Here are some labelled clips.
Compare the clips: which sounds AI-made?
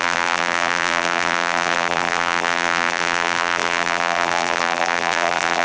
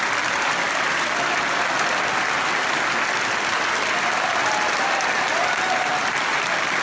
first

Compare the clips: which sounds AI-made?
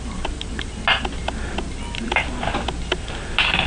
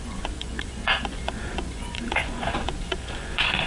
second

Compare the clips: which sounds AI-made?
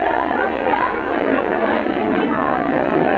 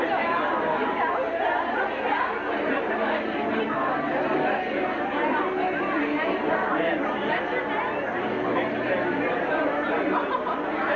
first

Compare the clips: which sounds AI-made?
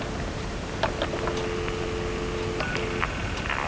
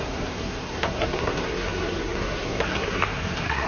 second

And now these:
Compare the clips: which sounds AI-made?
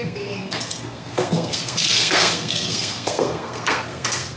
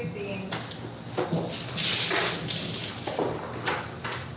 first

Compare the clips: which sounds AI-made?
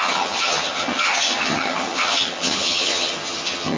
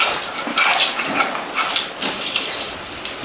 first